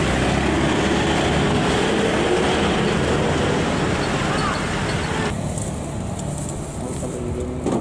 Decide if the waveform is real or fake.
real